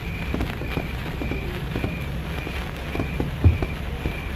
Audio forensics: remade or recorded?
recorded